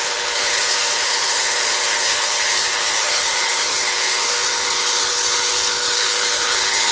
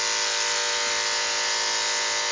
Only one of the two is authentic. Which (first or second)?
second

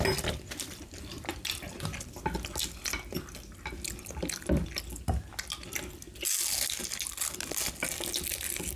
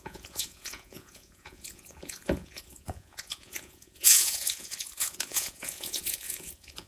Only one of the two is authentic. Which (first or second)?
first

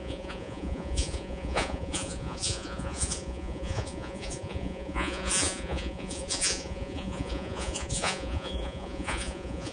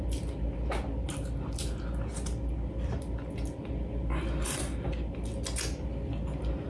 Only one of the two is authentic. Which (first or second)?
second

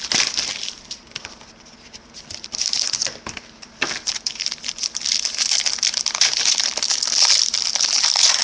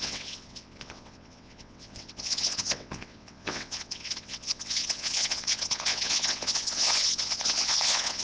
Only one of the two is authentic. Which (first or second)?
first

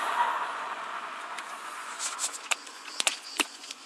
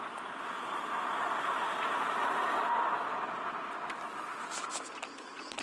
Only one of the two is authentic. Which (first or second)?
second